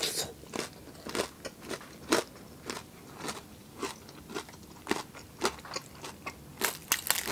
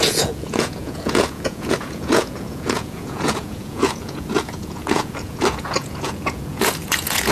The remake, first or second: second